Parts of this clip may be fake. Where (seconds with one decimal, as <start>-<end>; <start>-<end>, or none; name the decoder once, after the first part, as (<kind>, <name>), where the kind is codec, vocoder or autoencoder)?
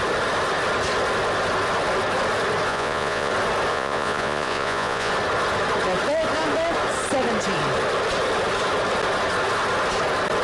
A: 2.7-3.3 (vocoder, Vocos); 3.7-5.1